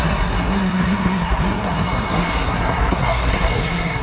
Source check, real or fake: fake